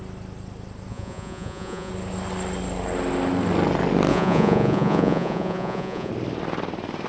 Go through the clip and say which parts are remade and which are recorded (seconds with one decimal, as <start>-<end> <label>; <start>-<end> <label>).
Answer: 0.0-0.9 recorded; 0.9-1.9 remade; 1.9-4.1 recorded; 4.1-6.1 remade; 6.1-7.1 recorded